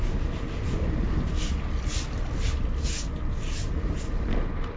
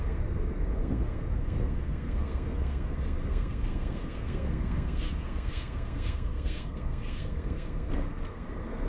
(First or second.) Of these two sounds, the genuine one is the first